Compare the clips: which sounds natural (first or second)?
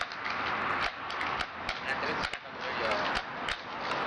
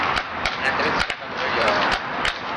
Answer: first